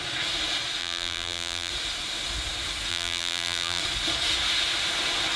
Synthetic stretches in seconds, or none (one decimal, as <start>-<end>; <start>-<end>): 0.8-1.7; 2.9-3.8